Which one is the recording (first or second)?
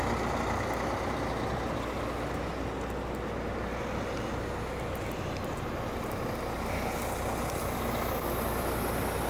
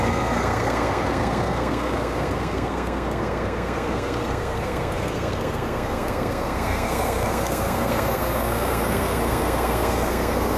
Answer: first